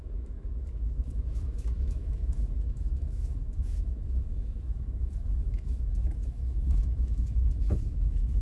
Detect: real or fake fake